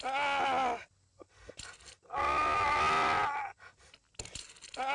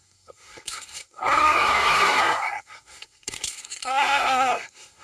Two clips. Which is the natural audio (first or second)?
first